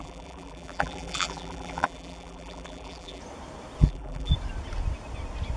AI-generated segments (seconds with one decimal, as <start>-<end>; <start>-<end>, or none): 0.0-3.2; 3.8-4.3